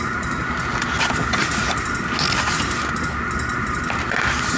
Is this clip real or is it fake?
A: real